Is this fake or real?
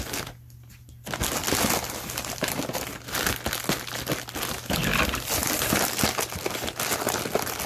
real